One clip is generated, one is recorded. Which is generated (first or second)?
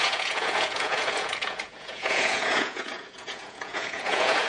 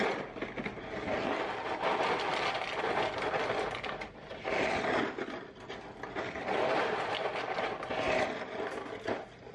first